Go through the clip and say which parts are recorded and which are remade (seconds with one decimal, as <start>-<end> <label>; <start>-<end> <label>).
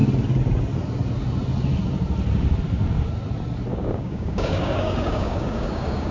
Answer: 0.0-3.7 recorded; 3.7-6.1 remade